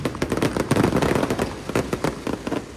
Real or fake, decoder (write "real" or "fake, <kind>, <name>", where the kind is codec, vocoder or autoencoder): real